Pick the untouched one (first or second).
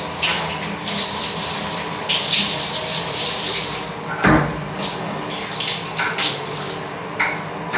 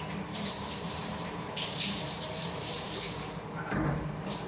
first